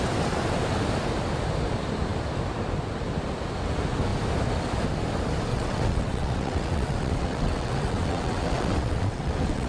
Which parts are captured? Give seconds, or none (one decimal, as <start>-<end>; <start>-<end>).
0.0-5.5